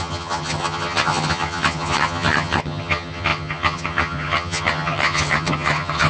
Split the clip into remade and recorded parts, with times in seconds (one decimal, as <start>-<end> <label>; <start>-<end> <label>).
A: 0.0-6.1 remade